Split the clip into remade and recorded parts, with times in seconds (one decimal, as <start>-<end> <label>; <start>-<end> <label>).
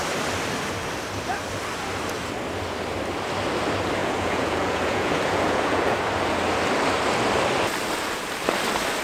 0.0-4.0 recorded; 4.0-6.0 remade; 6.0-9.0 recorded